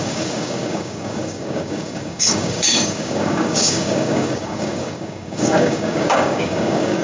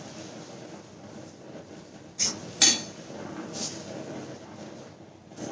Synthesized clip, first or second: first